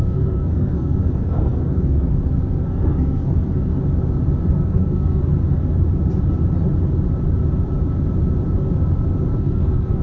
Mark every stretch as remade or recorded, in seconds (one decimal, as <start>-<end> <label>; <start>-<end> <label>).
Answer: 0.0-3.7 remade; 3.7-4.5 recorded; 4.5-5.3 remade; 5.3-9.3 recorded; 9.3-10.0 remade